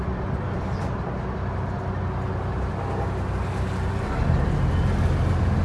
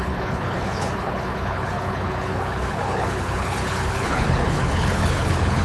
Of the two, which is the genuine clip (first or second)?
first